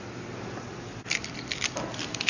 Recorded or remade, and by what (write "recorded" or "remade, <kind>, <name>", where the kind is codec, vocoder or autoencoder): recorded